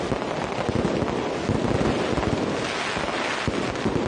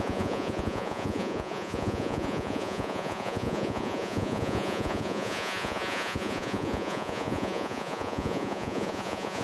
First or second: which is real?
first